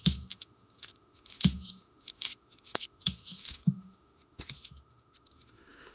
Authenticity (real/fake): fake